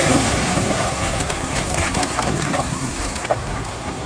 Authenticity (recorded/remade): remade